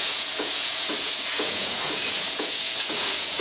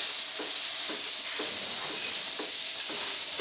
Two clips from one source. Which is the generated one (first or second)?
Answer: first